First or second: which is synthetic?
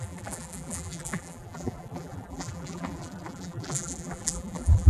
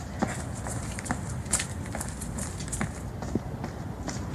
first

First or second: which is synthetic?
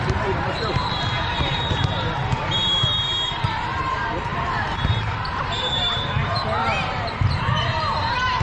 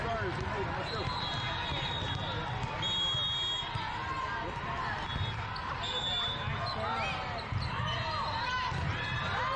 first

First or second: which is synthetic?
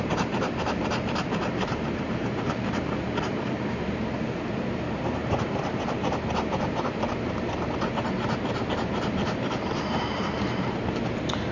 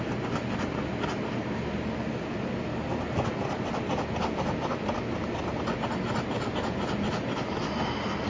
first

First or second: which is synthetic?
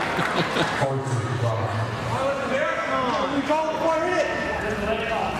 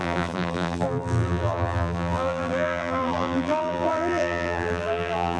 second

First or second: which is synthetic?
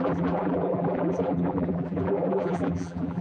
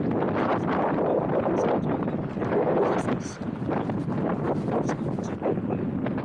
first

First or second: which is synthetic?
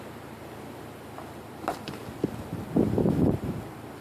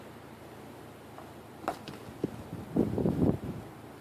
first